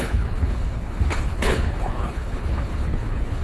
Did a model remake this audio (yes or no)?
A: yes